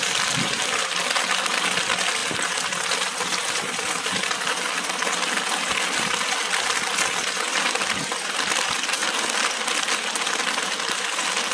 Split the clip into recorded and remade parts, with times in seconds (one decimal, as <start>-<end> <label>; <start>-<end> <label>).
0.0-11.5 recorded